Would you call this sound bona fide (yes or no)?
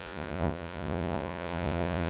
no